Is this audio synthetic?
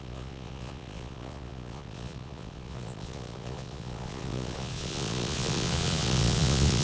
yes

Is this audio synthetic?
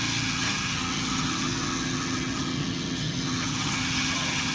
yes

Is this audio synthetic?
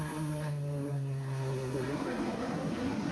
yes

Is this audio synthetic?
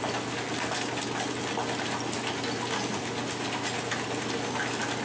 no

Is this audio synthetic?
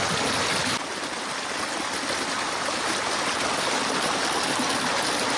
no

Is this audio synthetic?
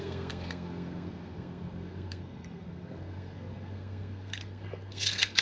yes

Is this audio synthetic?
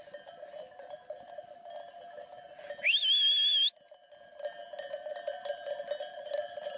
no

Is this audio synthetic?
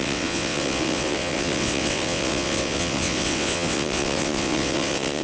yes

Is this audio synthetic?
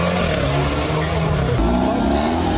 no